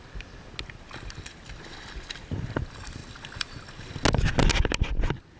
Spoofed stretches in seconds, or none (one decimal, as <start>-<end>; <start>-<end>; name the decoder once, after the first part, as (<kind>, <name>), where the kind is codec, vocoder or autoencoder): none